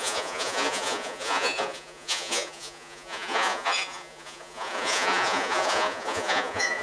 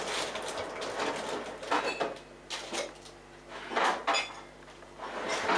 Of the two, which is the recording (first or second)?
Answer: second